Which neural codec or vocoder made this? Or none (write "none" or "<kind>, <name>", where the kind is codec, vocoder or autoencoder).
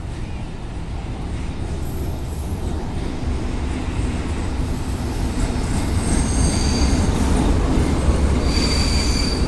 none